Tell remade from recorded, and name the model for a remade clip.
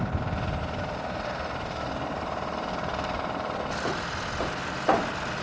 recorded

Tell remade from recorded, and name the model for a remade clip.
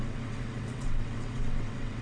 remade, vocoder, WaveNeXt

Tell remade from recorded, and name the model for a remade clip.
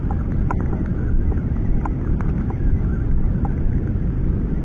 recorded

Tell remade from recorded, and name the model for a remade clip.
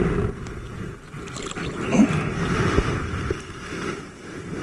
recorded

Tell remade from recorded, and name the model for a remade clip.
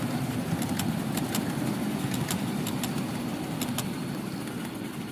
recorded